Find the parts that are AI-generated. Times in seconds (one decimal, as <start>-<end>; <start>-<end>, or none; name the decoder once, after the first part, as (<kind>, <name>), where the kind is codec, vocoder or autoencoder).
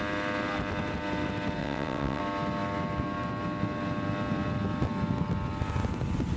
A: 1.6-2.2 (vocoder, WaveNeXt)